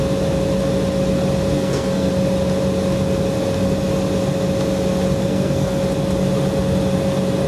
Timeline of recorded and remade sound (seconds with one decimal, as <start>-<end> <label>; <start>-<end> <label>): 0.0-1.5 recorded; 1.5-2.1 remade; 2.1-5.2 recorded; 5.2-5.8 remade; 5.8-7.5 recorded